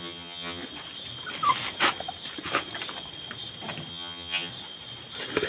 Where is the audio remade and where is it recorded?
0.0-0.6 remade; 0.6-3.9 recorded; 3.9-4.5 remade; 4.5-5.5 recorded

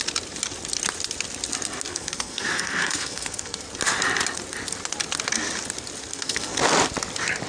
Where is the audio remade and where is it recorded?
0.0-1.9 recorded; 1.9-3.6 remade; 3.6-6.1 recorded; 6.1-6.6 remade; 6.6-7.5 recorded

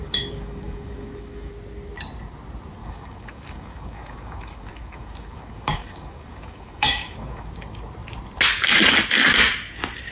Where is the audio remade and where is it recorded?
0.0-1.5 remade; 1.5-2.8 recorded; 2.8-7.5 remade; 7.5-10.1 recorded